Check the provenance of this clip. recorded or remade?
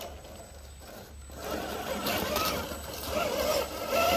recorded